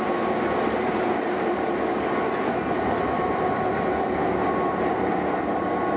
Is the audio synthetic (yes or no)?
no